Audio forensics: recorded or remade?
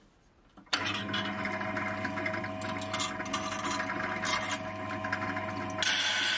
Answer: recorded